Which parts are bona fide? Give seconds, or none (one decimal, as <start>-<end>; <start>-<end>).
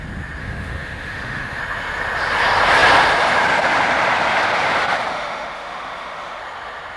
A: 0.0-0.4; 1.6-5.1; 6.4-7.0